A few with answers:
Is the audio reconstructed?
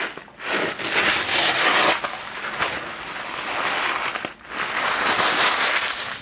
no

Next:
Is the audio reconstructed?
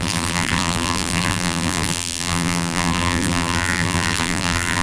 yes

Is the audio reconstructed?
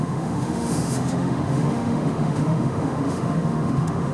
yes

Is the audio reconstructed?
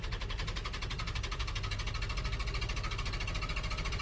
no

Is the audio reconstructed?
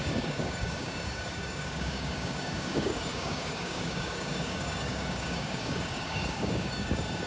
yes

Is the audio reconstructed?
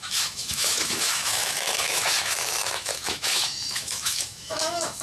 yes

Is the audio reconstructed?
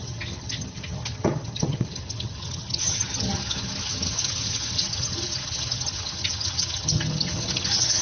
yes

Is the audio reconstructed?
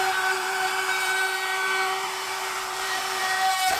yes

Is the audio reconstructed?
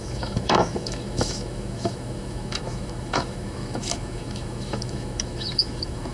yes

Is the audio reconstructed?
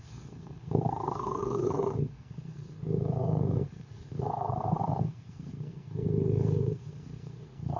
yes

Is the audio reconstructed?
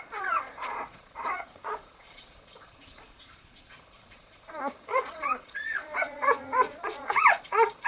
yes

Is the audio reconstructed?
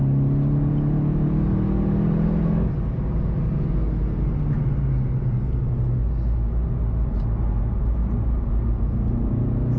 no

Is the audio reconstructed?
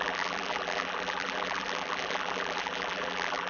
yes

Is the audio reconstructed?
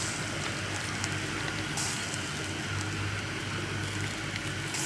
no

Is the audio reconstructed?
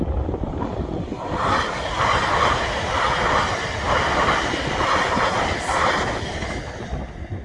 no